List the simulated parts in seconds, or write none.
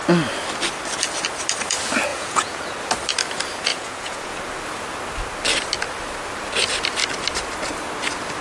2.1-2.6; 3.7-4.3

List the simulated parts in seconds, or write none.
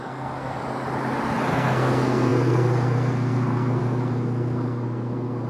0.0-0.6; 1.5-5.5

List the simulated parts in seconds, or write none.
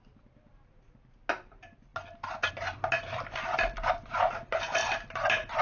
none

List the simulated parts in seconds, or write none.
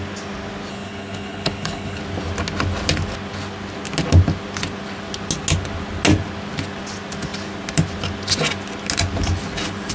0.7-2.0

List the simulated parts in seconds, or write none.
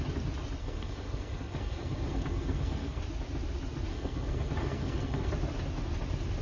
0.6-3.0; 3.9-5.3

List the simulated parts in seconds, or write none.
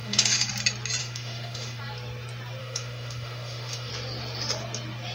0.0-0.5; 1.0-1.8; 2.6-3.9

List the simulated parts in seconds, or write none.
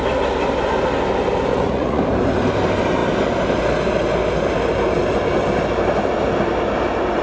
1.5-2.0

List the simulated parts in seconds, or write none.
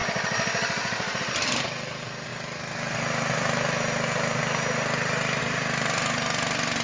none